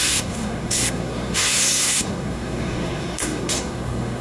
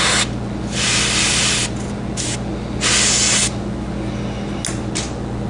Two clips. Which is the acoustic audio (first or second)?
second